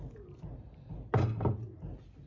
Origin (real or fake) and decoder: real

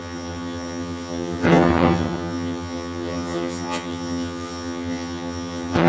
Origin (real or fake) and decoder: fake, vocoder, HiFi-GAN